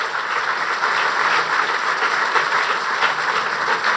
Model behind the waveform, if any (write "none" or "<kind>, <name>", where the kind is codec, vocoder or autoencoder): none